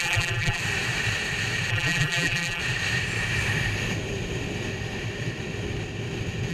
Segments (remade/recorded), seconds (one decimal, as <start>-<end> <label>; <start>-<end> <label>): 0.0-0.6 remade; 0.6-1.7 recorded; 1.7-2.6 remade; 2.6-6.5 recorded